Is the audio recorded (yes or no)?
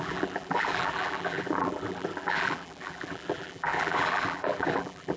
no